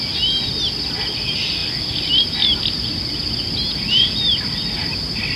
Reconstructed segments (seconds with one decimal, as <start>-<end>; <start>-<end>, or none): none